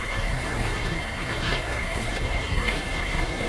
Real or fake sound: fake